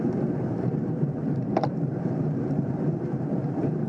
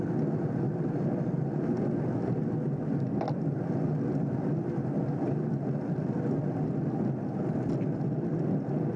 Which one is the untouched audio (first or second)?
second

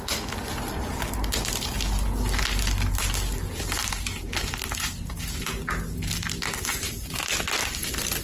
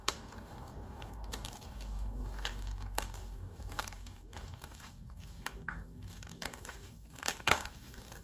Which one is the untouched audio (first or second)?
first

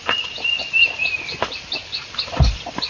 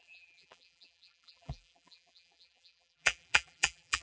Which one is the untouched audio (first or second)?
first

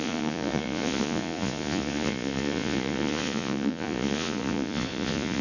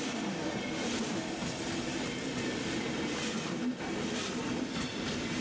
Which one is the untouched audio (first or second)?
second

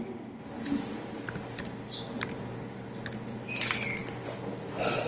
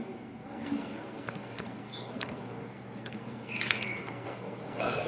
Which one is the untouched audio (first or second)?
first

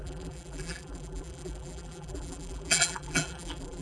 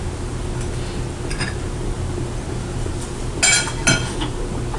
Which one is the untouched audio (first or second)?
second